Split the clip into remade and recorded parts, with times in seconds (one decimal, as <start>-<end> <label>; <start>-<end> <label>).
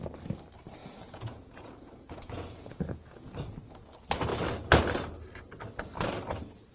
0.0-0.8 recorded; 0.8-3.5 remade; 3.5-6.7 recorded